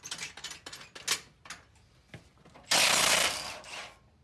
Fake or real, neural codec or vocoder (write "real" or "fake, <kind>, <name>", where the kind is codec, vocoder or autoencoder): real